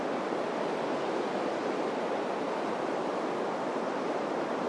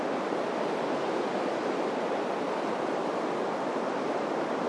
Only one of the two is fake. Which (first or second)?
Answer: second